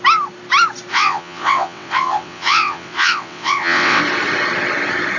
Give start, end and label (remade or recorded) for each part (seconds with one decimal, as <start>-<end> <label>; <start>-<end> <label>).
0.0-0.9 recorded; 0.9-4.0 remade; 4.0-5.2 recorded